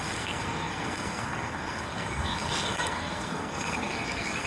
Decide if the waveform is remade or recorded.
remade